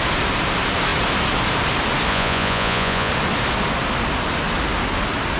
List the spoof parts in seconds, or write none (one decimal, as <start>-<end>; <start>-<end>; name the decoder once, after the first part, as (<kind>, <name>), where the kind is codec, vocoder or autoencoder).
2.1-3.1 (vocoder, Vocos)